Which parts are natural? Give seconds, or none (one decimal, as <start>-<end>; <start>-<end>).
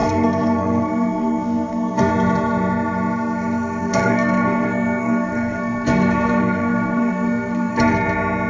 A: 2.1-3.8; 7.7-8.5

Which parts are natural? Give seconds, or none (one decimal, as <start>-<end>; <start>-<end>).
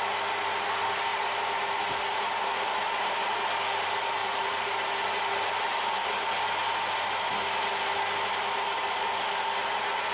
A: 0.0-4.2; 4.7-10.1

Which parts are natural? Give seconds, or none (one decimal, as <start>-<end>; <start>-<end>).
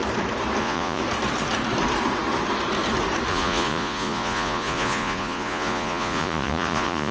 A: 0.0-0.6; 1.0-3.3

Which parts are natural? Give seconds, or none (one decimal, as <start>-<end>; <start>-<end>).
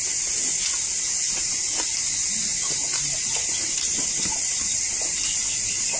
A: 0.0-2.5; 4.8-6.0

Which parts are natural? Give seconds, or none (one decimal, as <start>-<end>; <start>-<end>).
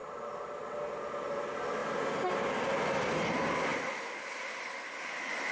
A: 0.0-5.5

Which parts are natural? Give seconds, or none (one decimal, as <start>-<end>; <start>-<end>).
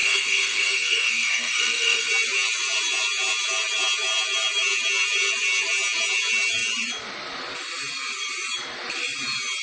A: 2.1-9.6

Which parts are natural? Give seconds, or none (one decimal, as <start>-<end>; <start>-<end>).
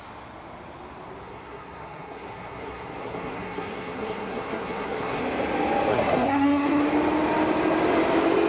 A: 0.0-1.2; 5.2-5.9; 6.8-8.5